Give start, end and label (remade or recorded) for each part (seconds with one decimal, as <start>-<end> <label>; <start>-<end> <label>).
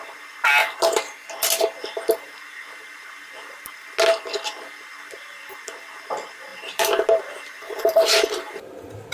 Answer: 0.0-1.8 recorded; 1.8-3.8 remade; 3.8-6.5 recorded; 6.5-8.6 remade; 8.6-9.1 recorded